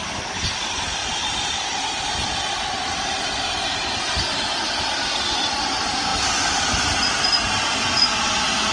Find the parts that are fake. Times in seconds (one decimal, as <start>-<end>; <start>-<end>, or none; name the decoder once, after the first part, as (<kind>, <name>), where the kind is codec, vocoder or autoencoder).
none